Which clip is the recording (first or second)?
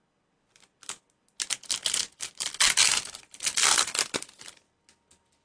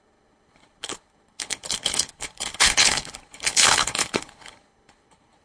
first